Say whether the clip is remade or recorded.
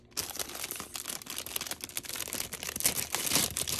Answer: recorded